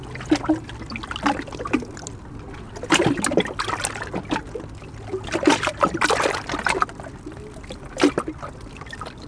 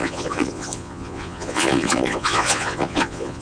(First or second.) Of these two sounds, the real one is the first